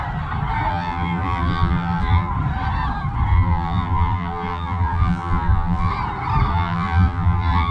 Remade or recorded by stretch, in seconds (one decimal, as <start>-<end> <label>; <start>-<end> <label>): 0.0-0.7 recorded; 0.7-2.3 remade; 2.3-3.3 recorded; 3.3-5.9 remade; 5.9-6.5 recorded; 6.5-7.7 remade